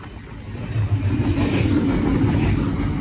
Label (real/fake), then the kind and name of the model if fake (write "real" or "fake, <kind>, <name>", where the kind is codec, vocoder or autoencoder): real